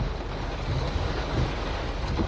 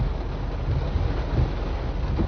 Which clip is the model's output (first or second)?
first